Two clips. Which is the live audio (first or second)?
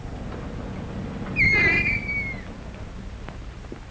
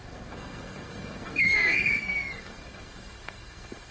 first